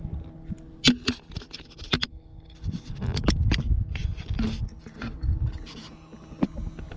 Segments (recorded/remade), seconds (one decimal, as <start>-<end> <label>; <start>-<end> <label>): 0.0-7.0 recorded